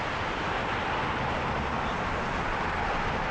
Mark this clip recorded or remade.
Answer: recorded